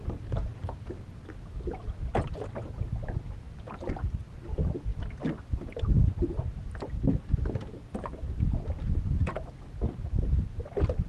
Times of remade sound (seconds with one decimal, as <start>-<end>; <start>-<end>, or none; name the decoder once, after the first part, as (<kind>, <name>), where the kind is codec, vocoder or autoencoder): none